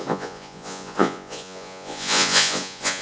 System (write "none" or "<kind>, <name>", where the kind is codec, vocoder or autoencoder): vocoder, Vocos